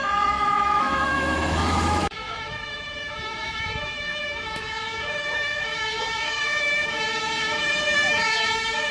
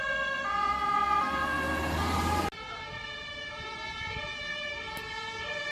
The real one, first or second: second